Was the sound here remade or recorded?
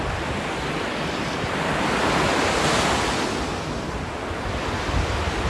recorded